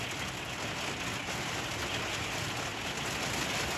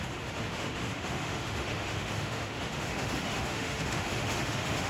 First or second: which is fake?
second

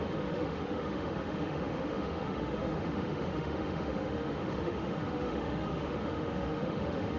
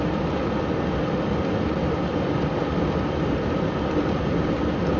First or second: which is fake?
first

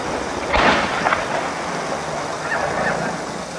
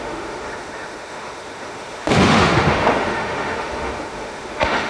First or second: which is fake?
second